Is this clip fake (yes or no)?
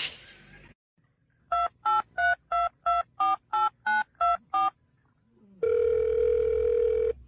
no